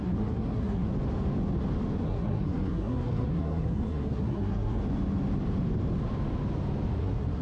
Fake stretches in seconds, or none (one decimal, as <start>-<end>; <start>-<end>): 0.0-0.9; 2.0-4.8; 7.0-7.4